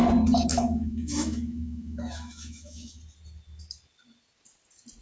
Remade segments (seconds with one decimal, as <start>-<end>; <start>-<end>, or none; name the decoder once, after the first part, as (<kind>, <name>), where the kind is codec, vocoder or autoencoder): 0.5-3.0 (autoencoder, DAC-VAE)

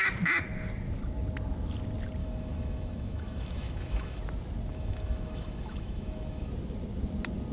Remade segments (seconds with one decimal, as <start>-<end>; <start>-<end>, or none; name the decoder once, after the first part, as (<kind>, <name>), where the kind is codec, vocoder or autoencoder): 2.2-4.2 (autoencoder, DAC-VAE); 4.7-6.5

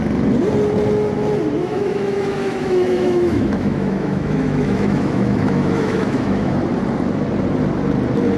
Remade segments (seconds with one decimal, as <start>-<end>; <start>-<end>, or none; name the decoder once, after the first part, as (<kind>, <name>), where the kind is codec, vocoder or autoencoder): 1.6-6.5 (autoencoder, DAC-VAE)

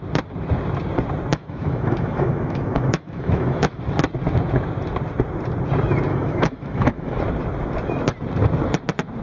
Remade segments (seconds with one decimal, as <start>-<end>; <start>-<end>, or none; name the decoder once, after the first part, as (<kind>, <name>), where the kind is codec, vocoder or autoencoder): 1.3-3.8 (autoencoder, DAC-VAE); 6.1-7.2

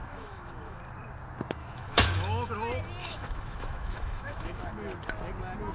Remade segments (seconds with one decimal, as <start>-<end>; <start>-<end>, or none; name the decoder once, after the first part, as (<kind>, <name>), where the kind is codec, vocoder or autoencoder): 0.0-0.8 (autoencoder, DAC-VAE); 1.6-2.5; 3.0-4.7

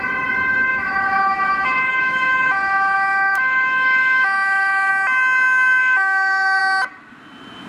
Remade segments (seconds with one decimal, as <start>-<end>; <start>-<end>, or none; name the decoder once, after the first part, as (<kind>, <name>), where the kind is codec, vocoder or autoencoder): 0.7-4.9 (autoencoder, DAC-VAE); 5.8-6.6

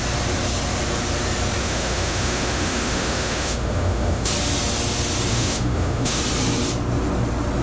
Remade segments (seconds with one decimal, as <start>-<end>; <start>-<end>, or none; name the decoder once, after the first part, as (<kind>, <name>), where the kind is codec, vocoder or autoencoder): 1.6-4.3 (autoencoder, DAC-VAE); 5.3-6.2

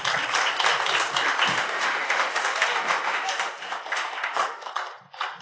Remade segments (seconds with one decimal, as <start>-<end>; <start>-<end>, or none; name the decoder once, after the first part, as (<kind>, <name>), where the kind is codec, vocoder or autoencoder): 1.5-4.7 (autoencoder, DAC-VAE)